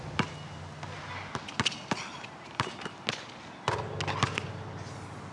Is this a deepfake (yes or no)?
no